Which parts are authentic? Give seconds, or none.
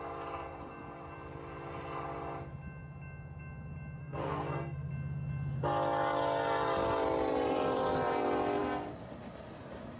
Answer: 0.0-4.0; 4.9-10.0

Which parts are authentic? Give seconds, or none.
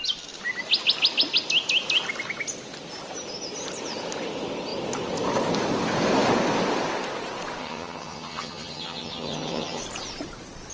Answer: 0.0-7.6; 9.8-10.7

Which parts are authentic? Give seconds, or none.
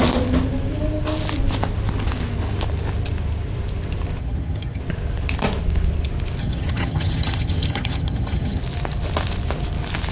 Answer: 0.0-4.2; 4.8-6.4; 8.6-10.1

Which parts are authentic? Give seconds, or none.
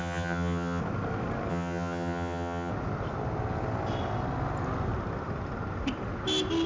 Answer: 0.8-1.5; 2.7-6.7